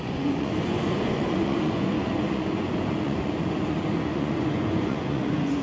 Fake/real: fake